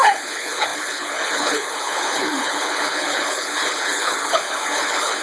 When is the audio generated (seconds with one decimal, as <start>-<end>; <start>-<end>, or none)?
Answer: 0.0-5.2